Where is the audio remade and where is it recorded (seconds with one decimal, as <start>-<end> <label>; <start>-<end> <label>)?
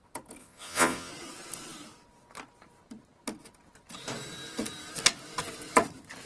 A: 0.0-0.4 recorded; 0.4-1.1 remade; 1.1-6.3 recorded